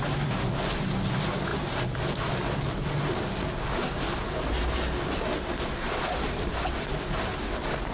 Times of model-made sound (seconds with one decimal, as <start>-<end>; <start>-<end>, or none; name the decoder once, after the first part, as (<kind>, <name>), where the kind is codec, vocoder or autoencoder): none